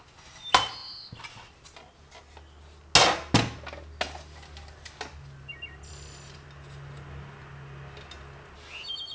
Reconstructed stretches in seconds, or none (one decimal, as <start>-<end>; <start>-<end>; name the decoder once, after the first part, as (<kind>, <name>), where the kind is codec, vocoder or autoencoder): none